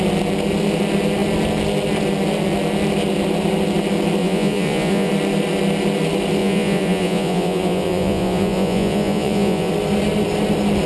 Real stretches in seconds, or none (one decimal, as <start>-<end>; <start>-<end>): 0.0-4.2; 5.1-6.4; 9.7-10.9